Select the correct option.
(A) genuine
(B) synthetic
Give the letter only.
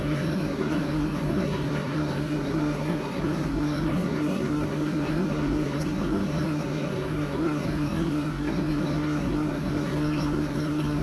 B